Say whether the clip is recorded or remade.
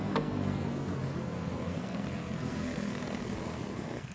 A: remade